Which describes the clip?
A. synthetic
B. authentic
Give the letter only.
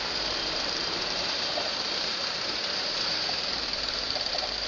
A